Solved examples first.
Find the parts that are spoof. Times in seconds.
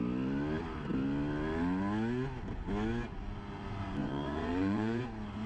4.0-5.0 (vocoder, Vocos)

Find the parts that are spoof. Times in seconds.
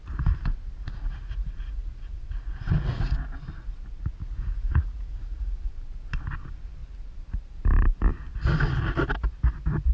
0.8-3.1 (vocoder, Vocos); 4.2-5.7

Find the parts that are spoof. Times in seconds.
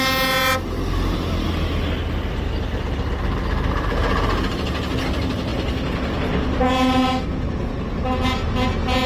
none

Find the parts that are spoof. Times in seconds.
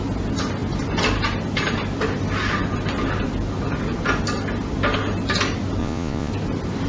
5.8-6.3 (vocoder, Vocos)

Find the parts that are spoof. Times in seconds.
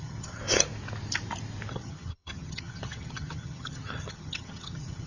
0.0-0.4 (vocoder, HiFi-GAN); 1.7-5.1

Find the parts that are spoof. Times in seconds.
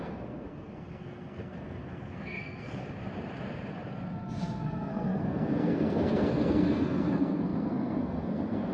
0.0-2.8 (codec, SNAC); 4.4-8.7